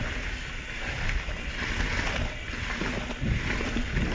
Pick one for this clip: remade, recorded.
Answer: recorded